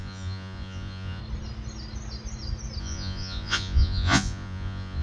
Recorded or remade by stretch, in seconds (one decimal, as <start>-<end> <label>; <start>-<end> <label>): 0.0-1.2 remade; 1.2-2.8 recorded; 2.8-5.0 remade